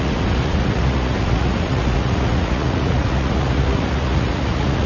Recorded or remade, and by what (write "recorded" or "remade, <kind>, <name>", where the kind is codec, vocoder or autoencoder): remade, vocoder, Vocos